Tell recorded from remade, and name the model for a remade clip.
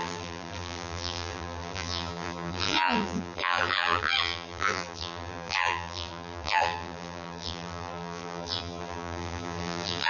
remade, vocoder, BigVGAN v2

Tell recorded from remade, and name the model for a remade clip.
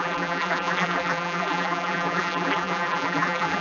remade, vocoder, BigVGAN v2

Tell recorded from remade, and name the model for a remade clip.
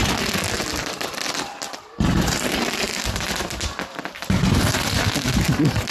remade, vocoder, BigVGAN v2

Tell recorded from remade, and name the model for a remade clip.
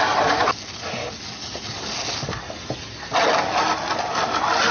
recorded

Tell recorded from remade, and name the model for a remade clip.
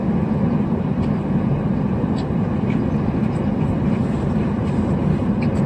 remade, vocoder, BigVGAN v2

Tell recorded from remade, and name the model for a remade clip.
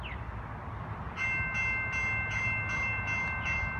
recorded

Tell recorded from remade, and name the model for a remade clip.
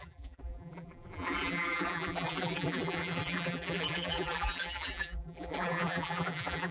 remade, vocoder, BigVGAN v2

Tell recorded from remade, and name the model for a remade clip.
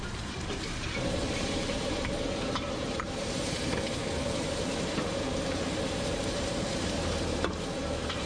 remade, vocoder, BigVGAN v2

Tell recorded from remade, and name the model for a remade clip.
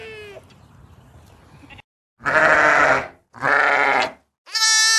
recorded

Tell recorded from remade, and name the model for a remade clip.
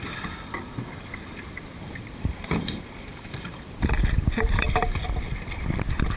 remade, vocoder, BigVGAN v2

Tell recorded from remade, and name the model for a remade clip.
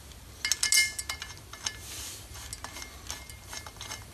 recorded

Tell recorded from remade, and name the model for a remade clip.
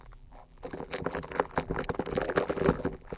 remade, vocoder, BigVGAN v2